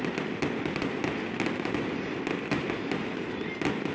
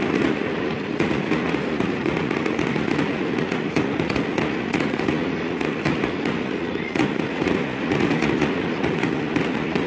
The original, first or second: first